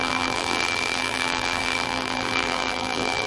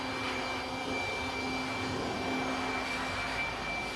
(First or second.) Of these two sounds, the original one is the second